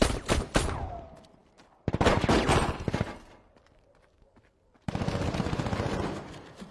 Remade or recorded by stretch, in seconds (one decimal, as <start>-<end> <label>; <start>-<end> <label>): 0.0-6.7 remade